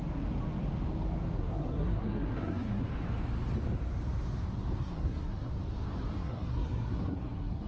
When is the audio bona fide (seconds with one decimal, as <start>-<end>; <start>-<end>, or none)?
0.0-1.3; 2.8-4.8; 5.5-6.1

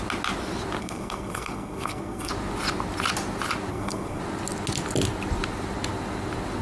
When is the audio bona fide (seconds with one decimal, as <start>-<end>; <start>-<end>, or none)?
0.0-0.8; 2.3-3.7; 4.2-6.6

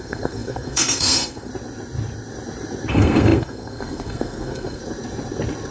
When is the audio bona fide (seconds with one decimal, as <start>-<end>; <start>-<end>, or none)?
1.5-2.9; 4.8-5.7

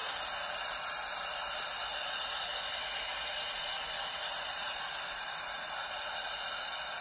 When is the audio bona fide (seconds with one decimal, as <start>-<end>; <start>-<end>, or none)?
0.0-7.0